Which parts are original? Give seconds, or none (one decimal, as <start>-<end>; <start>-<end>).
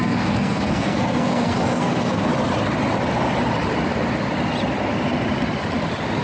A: 2.3-6.2